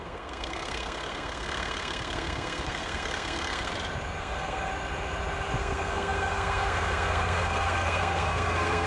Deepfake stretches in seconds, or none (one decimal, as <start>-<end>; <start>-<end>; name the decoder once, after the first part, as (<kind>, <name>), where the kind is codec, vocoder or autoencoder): 0.0-3.7 (codec, SNAC); 4.2-4.7; 5.6-8.9

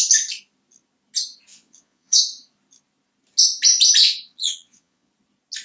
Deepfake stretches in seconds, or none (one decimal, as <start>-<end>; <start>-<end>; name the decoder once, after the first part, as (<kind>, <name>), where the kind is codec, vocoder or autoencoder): 1.5-2.2 (vocoder, Vocos); 4.0-5.1

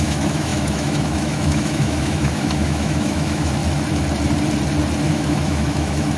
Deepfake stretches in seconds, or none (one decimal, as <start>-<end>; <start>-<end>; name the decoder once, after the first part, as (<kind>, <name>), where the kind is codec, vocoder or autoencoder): 0.0-3.6 (autoencoder, DAC-VAE); 5.1-6.2

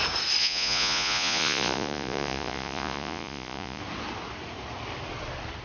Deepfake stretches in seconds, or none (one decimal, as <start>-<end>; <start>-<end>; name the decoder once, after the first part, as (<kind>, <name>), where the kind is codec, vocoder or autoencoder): 0.4-3.8 (vocoder, Vocos)

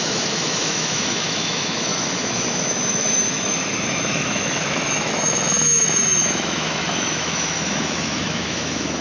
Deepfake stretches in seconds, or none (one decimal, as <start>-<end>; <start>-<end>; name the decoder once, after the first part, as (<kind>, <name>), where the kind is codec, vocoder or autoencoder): 0.0-9.0 (autoencoder, DAC-VAE)

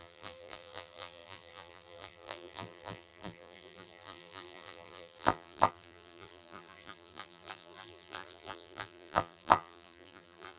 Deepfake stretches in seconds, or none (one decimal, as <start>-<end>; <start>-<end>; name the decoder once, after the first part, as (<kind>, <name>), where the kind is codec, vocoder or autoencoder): 0.0-10.6 (vocoder, BigVGAN v2)